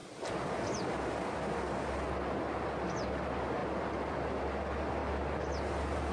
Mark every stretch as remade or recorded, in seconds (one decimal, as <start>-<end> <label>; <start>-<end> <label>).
0.0-6.1 recorded